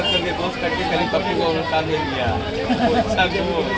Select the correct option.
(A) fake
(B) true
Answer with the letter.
B